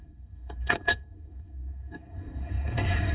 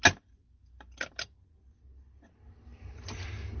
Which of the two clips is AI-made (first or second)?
first